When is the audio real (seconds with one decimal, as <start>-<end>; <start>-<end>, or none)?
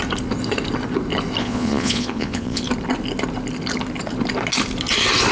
0.0-1.4; 2.6-5.3